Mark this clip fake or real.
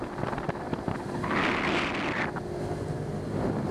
real